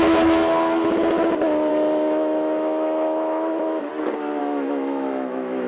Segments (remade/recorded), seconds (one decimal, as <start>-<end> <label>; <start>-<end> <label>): 0.0-1.7 recorded; 1.7-3.9 remade; 3.9-4.4 recorded; 4.4-5.7 remade